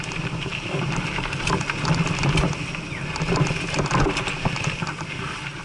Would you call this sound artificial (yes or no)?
no